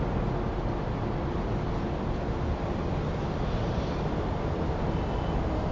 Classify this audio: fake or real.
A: real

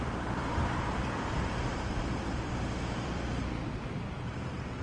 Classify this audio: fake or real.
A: fake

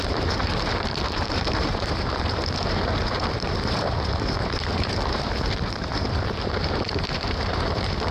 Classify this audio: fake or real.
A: fake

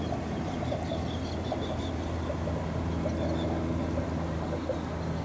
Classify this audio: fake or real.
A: real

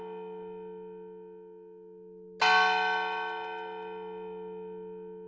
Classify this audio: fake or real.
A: real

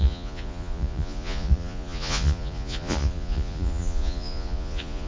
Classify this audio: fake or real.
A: fake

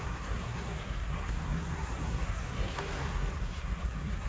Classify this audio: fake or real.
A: fake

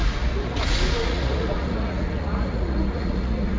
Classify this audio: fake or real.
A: fake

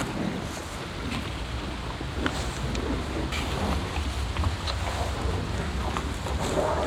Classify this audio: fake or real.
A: real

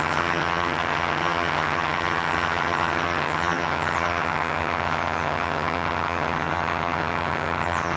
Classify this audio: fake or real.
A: fake